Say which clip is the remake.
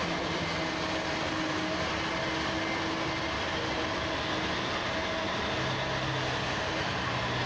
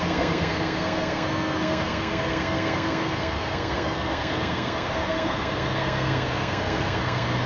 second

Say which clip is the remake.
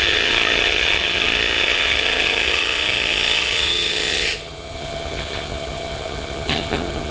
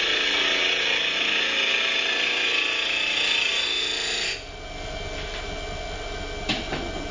first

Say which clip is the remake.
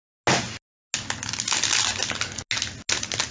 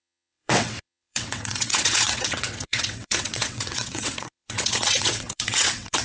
second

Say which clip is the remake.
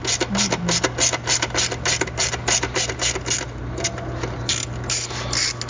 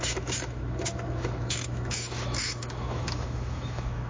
second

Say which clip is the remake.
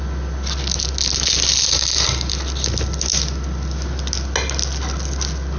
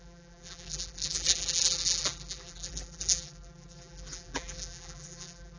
second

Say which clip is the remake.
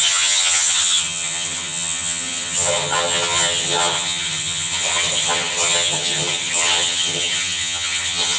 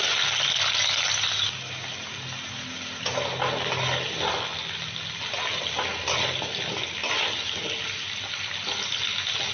first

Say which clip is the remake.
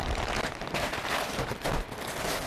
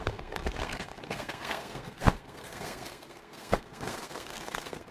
second